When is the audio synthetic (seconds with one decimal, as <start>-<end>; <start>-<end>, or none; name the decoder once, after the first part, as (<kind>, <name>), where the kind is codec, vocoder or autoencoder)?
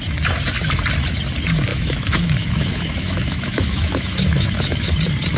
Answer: 1.7-4.9 (autoencoder, DAC-VAE)